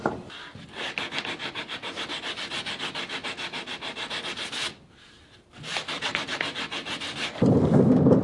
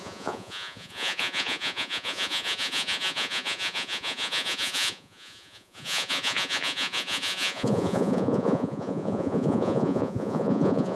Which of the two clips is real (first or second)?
first